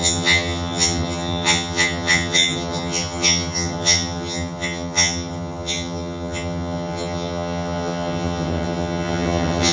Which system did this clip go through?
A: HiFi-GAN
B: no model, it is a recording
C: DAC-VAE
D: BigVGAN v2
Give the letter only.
A